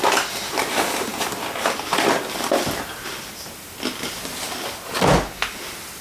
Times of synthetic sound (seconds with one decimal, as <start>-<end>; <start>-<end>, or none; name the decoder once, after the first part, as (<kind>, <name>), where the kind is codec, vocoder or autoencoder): none

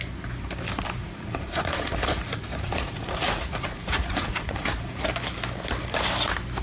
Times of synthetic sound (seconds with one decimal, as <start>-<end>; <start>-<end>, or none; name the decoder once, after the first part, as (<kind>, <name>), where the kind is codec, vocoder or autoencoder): 1.0-5.0 (vocoder, Vocos)

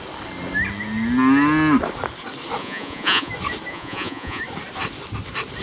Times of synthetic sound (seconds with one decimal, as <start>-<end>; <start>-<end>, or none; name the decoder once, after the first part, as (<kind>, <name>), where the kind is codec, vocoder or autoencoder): 2.6-3.3 (vocoder, Vocos); 3.7-4.4

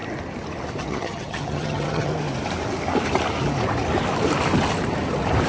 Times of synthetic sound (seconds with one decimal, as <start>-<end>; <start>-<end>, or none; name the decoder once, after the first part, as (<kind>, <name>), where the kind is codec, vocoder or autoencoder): 0.8-2.1 (vocoder, HiFi-GAN)

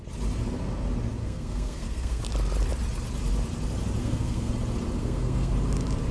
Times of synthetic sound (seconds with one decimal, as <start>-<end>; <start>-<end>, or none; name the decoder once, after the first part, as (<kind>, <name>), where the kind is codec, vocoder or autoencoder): 1.2-2.2 (codec, SNAC); 4.0-4.5; 5.0-5.5

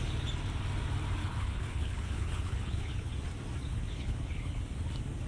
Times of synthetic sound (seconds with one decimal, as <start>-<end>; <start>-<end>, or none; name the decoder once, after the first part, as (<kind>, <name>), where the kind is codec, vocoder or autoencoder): 1.2-3.1 (codec, HILCodec); 3.7-4.6